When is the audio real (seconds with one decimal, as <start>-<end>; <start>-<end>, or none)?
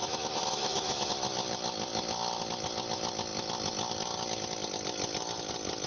1.1-5.9